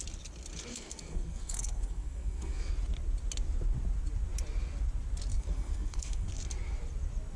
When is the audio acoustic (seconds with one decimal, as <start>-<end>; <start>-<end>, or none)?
0.0-0.7; 2.7-5.3; 6.3-7.4